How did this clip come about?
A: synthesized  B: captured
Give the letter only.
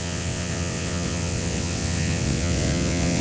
A